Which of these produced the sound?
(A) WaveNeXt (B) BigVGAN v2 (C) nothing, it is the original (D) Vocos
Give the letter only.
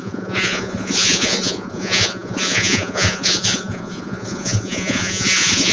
D